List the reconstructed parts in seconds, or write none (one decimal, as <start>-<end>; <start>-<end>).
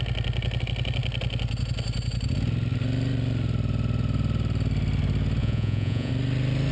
5.4-6.1